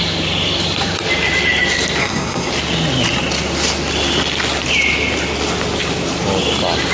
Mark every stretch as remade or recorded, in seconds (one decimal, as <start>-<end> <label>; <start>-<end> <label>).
0.0-2.0 recorded; 2.0-2.5 remade; 2.5-6.9 recorded